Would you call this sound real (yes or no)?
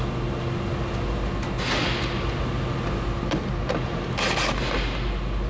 yes